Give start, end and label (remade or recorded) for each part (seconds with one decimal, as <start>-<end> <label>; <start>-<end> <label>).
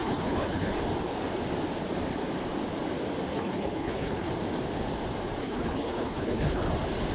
0.0-0.8 remade; 0.8-3.3 recorded; 3.3-4.3 remade; 4.3-5.4 recorded; 5.4-6.6 remade; 6.6-7.1 recorded